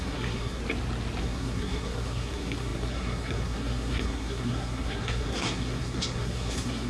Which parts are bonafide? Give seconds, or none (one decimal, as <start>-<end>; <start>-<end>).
0.6-1.2